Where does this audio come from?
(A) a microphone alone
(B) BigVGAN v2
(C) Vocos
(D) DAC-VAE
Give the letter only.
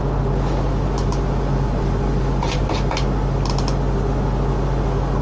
A